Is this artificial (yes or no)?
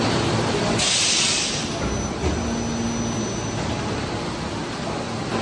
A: no